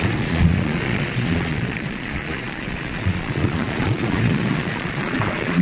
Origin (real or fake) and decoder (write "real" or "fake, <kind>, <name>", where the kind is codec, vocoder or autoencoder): fake, vocoder, Vocos